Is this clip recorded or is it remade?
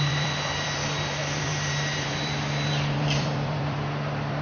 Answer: remade